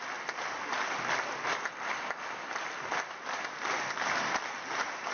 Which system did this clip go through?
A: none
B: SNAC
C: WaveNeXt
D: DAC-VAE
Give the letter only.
A